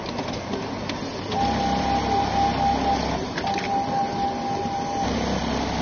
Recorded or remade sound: recorded